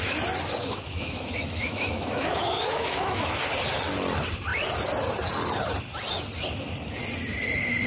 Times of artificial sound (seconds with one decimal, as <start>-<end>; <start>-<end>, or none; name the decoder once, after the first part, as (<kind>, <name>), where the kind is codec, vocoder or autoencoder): 0.6-3.4 (autoencoder, DAC-VAE)